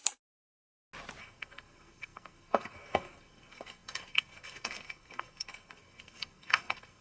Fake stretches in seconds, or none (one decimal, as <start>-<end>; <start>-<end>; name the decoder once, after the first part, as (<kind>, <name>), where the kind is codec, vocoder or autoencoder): 1.2-7.0 (codec, SNAC)